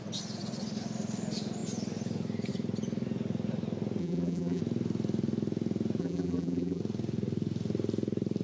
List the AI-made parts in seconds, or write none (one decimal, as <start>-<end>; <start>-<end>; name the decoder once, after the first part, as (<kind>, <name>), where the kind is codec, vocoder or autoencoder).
4.0-4.6 (vocoder, BigVGAN v2); 6.0-6.8